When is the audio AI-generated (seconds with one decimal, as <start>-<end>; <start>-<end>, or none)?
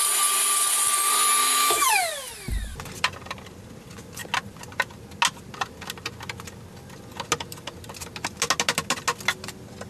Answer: 1.4-1.9